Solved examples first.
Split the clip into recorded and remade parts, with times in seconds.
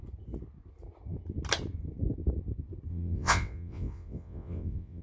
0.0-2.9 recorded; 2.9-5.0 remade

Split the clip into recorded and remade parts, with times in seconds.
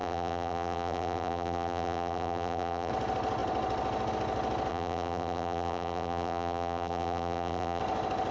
0.0-2.9 remade; 2.9-4.7 recorded; 4.7-7.8 remade; 7.8-8.3 recorded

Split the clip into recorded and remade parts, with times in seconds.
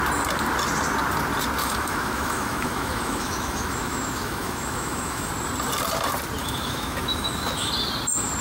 0.0-1.6 recorded; 1.6-5.3 remade; 5.3-6.4 recorded; 6.4-7.7 remade; 7.7-8.4 recorded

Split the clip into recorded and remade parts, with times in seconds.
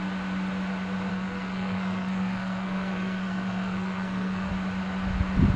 0.0-1.1 recorded; 1.1-4.5 remade; 4.5-5.6 recorded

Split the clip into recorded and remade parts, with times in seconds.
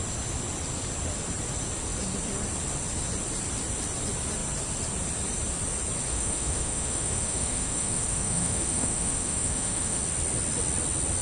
0.0-6.1 recorded; 6.1-10.0 remade; 10.0-11.2 recorded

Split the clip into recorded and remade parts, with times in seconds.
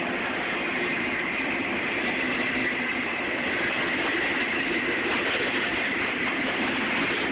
0.0-7.3 recorded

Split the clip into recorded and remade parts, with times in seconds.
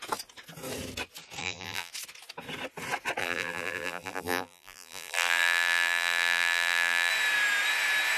0.0-1.4 recorded; 1.4-1.9 remade; 1.9-3.2 recorded; 3.2-7.1 remade; 7.1-8.2 recorded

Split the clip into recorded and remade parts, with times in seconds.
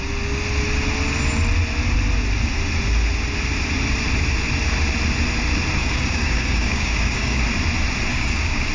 0.0-5.8 recorded; 5.8-7.4 remade; 7.4-8.1 recorded; 8.1-8.7 remade